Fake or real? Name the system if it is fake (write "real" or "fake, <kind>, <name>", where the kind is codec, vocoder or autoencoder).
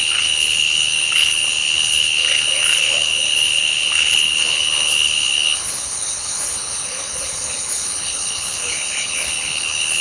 fake, codec, HILCodec